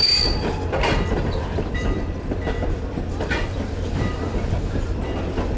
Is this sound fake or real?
fake